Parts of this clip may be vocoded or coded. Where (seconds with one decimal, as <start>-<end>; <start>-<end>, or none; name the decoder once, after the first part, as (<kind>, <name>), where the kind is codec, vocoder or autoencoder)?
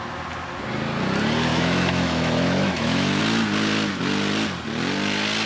1.5-3.2 (autoencoder, DAC-VAE)